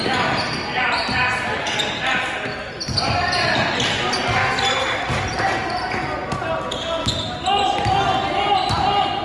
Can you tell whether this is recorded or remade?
recorded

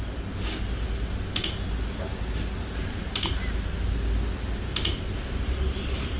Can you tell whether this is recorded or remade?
recorded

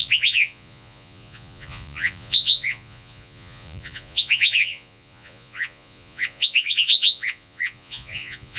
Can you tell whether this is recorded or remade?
remade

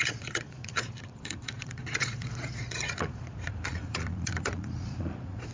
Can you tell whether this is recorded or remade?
remade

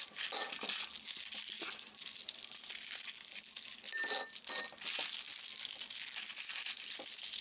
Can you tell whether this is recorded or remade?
recorded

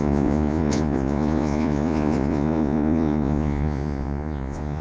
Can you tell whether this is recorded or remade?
remade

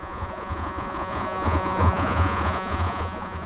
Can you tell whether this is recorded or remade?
remade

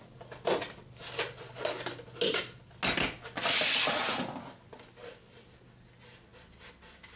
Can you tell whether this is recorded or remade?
recorded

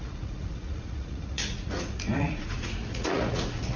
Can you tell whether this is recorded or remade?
remade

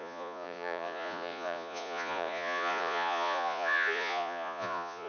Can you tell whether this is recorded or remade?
remade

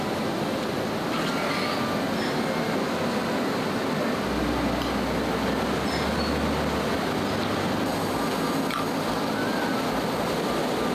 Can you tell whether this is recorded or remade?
recorded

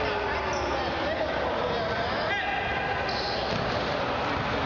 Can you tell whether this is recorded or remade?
recorded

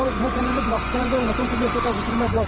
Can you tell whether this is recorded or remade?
remade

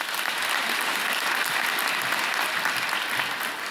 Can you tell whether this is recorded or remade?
recorded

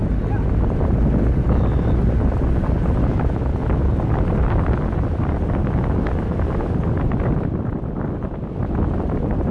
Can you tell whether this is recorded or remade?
recorded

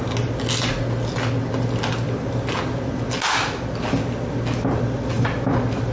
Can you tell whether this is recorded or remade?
recorded